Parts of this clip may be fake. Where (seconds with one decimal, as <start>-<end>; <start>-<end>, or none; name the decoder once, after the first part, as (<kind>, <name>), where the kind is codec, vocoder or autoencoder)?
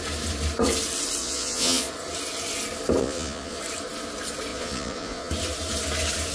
1.2-1.9 (vocoder, Vocos); 3.0-3.6; 4.5-5.3